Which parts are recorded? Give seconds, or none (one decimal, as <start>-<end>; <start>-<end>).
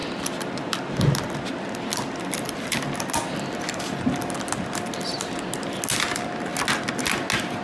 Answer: 0.0-7.6